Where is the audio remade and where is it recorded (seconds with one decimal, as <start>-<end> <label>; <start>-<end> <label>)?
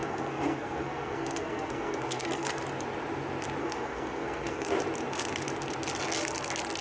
0.0-2.6 remade; 2.6-3.6 recorded; 3.6-4.7 remade; 4.7-6.8 recorded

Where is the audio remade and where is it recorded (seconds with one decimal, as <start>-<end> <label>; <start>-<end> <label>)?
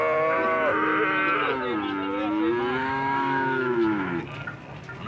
0.0-2.8 recorded; 2.8-4.2 remade; 4.2-5.1 recorded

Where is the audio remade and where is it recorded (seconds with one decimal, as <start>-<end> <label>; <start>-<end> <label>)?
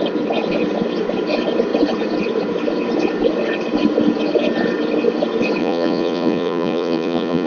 0.0-5.6 recorded; 5.6-7.5 remade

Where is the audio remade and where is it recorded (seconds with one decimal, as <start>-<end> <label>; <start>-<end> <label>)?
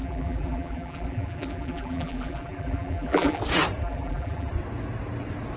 0.0-3.4 remade; 3.4-3.8 recorded; 3.8-4.5 remade; 4.5-5.6 recorded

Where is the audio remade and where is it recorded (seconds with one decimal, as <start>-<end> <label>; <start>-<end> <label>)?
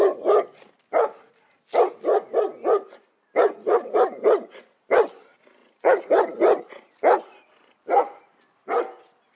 0.0-5.6 recorded; 5.6-6.1 remade; 6.1-9.4 recorded